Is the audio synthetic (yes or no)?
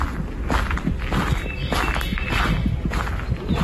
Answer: no